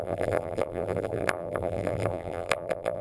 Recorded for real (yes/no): no